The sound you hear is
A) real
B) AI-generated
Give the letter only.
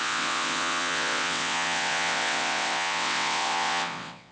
B